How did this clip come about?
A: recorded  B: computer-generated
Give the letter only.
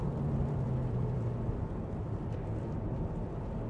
B